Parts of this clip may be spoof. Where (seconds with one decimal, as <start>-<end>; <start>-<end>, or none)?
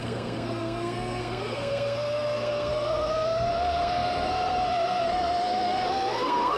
0.0-6.6